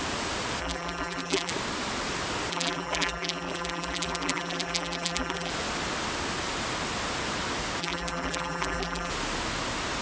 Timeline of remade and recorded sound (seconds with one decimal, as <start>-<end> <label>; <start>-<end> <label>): 0.0-0.6 recorded; 0.6-1.5 remade; 1.5-2.5 recorded; 2.5-5.5 remade; 5.5-7.8 recorded; 7.8-9.1 remade; 9.1-10.0 recorded